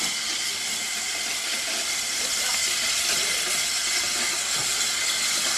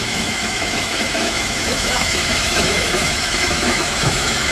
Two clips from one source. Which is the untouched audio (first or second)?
first